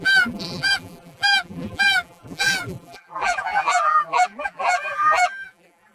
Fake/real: fake